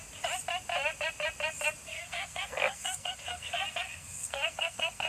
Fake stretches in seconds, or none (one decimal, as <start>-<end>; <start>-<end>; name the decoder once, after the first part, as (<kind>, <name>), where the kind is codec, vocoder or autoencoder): 1.9-5.1 (codec, SNAC)